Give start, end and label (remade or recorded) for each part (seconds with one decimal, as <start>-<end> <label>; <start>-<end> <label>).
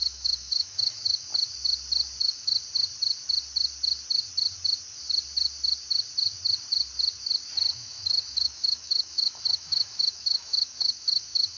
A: 0.0-1.3 remade; 1.3-2.2 recorded; 2.2-2.6 remade; 2.6-7.7 recorded; 7.7-11.6 remade